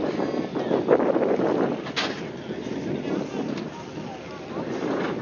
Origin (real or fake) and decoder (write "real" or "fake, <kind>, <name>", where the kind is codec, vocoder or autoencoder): real